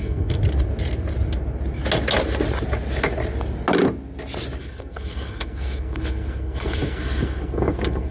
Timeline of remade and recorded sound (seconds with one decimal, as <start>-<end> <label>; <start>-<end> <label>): 0.0-0.4 remade; 0.4-4.6 recorded; 4.6-8.1 remade